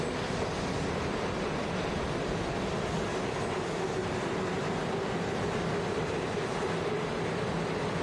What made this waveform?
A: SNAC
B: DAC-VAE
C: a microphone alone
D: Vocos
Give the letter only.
C